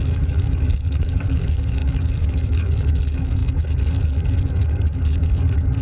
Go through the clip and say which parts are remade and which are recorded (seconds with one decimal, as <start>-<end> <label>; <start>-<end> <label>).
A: 0.0-5.8 remade